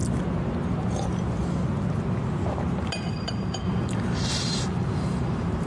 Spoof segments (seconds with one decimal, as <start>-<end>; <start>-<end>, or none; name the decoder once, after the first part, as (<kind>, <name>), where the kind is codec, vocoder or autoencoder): 3.1-5.7 (vocoder, BigVGAN v2)